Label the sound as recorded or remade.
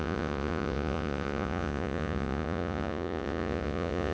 remade